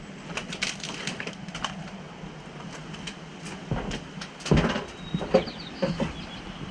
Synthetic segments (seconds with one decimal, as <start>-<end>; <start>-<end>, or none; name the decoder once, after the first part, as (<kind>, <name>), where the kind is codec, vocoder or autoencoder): none